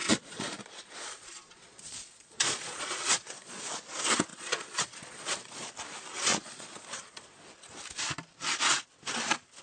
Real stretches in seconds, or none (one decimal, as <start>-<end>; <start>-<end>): 3.7-4.3; 5.7-6.3; 7.5-9.6